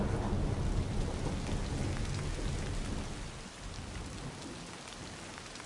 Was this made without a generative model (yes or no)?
yes